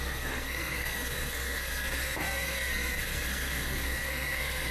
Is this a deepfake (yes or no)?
yes